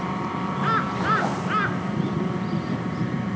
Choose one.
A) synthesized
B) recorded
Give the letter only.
B